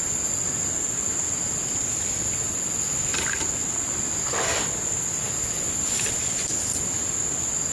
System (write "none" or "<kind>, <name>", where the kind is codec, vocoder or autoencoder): none